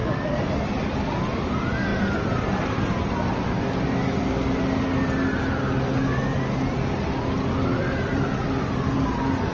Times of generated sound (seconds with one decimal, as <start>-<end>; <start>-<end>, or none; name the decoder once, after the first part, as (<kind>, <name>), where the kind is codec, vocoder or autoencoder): 0.0-1.1 (vocoder, BigVGAN v2); 1.9-2.7; 7.7-9.5